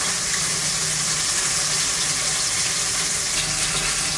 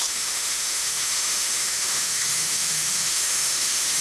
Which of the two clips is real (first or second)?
first